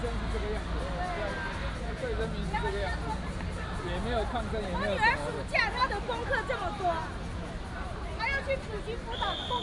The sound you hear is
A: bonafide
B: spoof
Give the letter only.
A